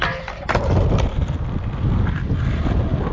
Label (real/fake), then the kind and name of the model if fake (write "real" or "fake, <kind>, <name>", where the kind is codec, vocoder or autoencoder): real